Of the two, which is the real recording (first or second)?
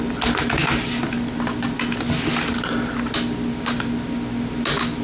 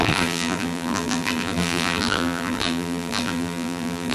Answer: first